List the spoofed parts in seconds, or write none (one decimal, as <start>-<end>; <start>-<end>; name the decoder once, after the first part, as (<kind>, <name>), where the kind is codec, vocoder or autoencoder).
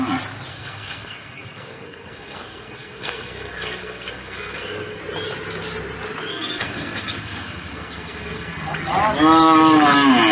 0.5-5.0 (codec, SNAC); 6.3-8.9